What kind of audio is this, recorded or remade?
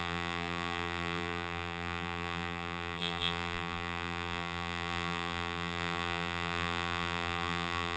remade